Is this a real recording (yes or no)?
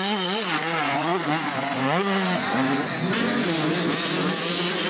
no